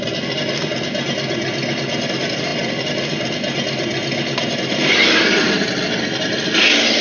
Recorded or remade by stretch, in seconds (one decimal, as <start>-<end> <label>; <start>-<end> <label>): 0.0-7.0 recorded